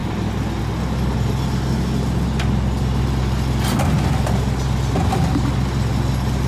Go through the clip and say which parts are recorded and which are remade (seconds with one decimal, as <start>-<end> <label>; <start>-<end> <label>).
0.0-6.5 recorded